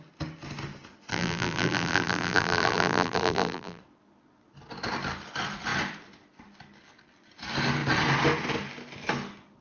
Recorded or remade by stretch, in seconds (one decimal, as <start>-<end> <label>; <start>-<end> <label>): 0.0-1.1 recorded; 1.1-3.8 remade; 3.8-9.6 recorded